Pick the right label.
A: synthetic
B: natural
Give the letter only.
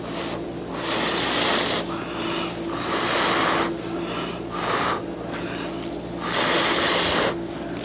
B